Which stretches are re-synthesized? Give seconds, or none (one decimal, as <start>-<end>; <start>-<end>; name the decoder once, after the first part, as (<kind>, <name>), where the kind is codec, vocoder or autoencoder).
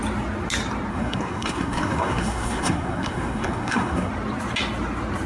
0.9-4.1 (codec, SNAC)